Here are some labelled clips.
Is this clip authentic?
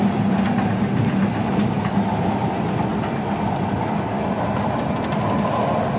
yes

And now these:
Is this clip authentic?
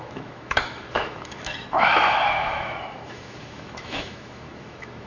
no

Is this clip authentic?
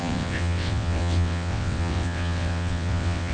no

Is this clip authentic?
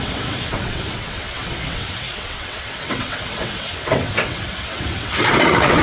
no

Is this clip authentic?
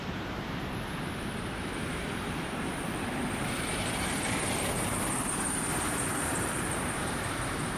no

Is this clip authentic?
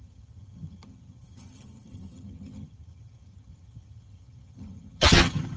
no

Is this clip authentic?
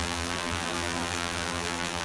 no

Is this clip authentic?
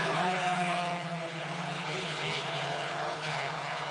no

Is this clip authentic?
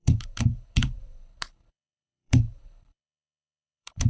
no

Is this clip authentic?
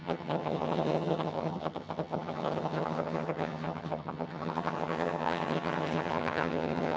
no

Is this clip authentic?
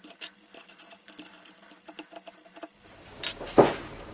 yes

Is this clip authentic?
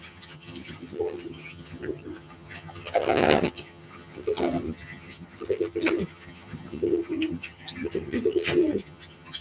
no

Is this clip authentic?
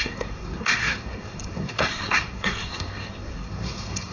no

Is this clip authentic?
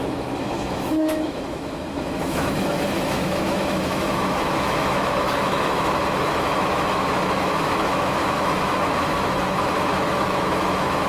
no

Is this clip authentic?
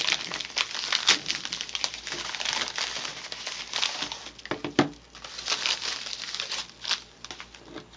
yes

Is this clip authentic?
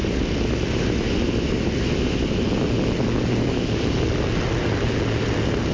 yes